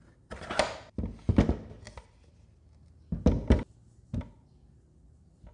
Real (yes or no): yes